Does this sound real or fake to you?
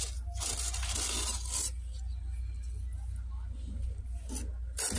real